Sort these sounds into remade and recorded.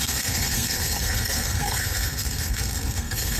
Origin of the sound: remade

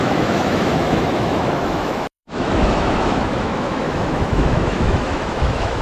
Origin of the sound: remade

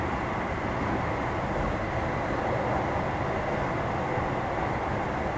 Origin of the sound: recorded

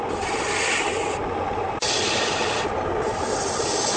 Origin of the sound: recorded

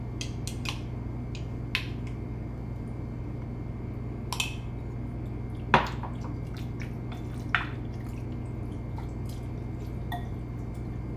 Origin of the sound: recorded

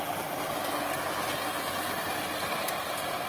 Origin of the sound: recorded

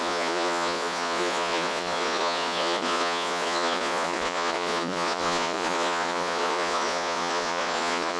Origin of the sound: remade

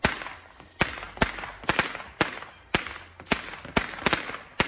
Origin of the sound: recorded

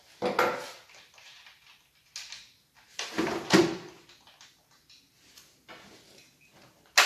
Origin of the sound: recorded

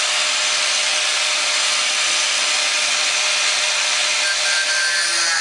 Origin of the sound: recorded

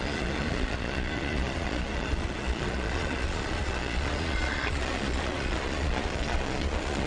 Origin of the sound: remade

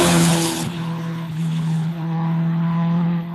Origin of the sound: remade